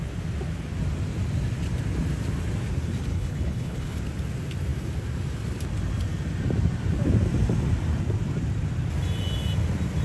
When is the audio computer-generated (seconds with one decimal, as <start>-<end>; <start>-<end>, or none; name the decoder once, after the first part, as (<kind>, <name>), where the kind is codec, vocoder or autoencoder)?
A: 3.1-4.0 (codec, HILCodec)